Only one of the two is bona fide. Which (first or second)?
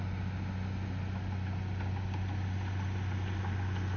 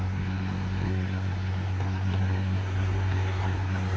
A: first